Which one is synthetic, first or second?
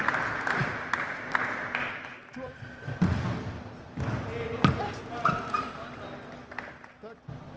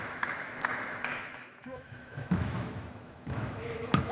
second